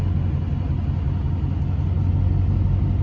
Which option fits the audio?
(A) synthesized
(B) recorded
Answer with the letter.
B